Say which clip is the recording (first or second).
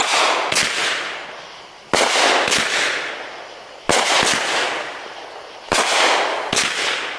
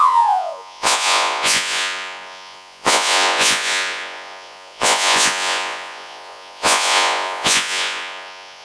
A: first